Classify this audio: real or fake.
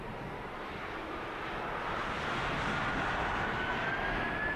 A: real